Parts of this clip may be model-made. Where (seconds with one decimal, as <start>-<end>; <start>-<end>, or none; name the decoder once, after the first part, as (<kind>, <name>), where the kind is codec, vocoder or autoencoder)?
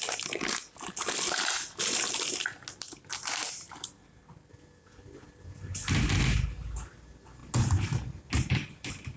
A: none